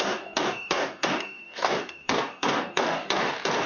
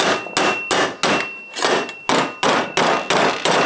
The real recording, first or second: second